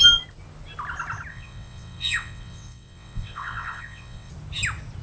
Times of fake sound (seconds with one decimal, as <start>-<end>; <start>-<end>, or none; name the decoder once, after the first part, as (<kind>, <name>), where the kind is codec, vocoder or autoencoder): 1.3-4.3 (vocoder, WaveNeXt)